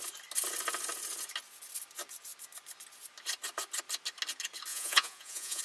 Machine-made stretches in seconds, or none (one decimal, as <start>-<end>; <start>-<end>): 4.7-5.6